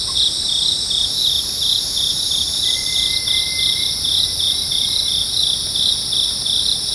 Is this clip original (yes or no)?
yes